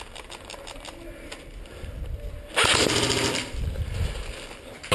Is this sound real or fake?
real